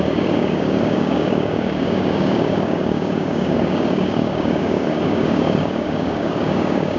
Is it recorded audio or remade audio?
remade